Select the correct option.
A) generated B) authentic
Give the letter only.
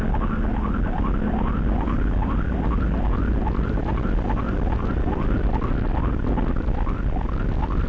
B